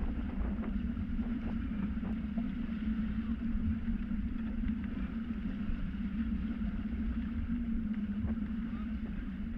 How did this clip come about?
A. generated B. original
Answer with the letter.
A